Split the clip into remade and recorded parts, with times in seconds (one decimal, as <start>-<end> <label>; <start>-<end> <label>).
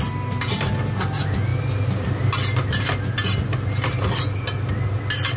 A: 0.0-5.4 recorded